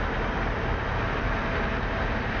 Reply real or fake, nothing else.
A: real